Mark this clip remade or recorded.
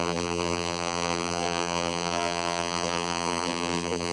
remade